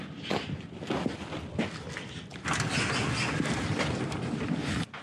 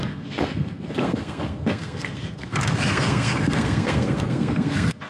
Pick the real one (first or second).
first